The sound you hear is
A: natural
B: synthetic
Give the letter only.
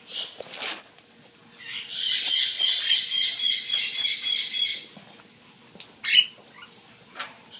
A